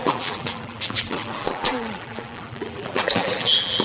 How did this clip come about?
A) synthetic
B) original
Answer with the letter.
A